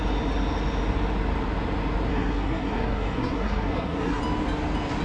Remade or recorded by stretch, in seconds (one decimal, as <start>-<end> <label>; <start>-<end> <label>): 0.0-2.1 recorded; 2.1-4.2 remade; 4.2-5.0 recorded